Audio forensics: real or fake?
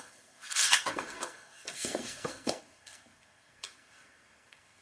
fake